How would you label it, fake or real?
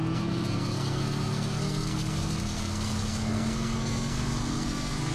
fake